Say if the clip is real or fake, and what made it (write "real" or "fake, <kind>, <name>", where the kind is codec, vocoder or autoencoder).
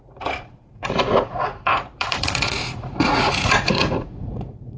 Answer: fake, vocoder, Vocos